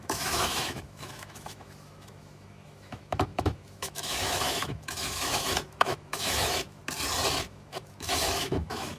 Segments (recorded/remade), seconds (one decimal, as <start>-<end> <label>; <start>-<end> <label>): 0.0-6.8 remade; 6.8-7.4 recorded; 7.4-9.0 remade